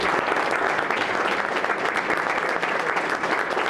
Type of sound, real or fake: real